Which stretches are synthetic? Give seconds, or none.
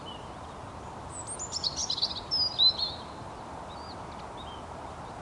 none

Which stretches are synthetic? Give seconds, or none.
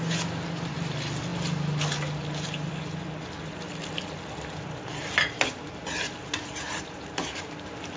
none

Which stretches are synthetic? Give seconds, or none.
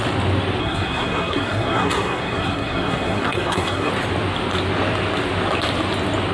0.6-3.9 (codec, SNAC)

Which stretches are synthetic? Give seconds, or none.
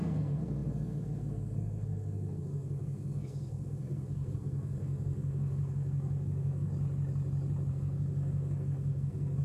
0.0-6.7 (codec, SNAC); 7.7-9.4